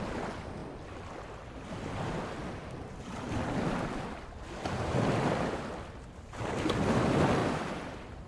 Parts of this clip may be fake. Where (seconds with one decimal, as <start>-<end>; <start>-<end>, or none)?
0.6-4.3; 7.4-8.3